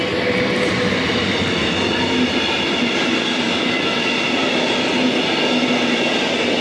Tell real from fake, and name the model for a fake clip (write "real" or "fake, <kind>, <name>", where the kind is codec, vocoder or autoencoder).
real